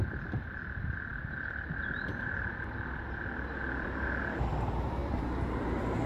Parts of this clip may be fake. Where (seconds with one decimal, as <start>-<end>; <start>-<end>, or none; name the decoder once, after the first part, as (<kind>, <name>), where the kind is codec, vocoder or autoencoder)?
none